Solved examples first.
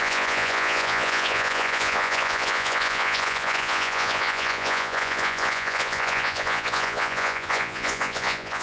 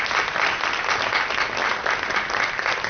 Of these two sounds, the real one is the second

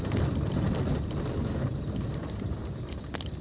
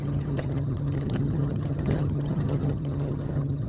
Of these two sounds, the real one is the first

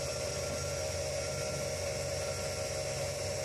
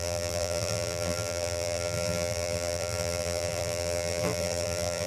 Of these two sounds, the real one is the first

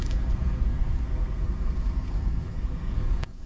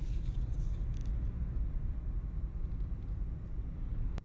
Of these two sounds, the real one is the second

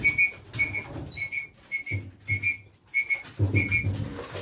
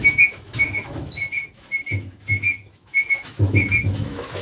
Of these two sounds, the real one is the first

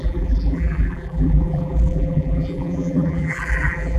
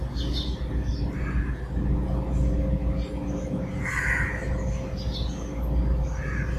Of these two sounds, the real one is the second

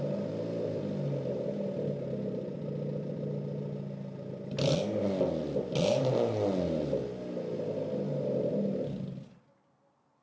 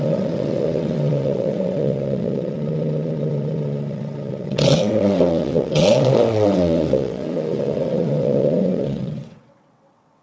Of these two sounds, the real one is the first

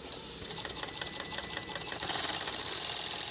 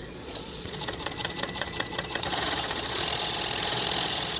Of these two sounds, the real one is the first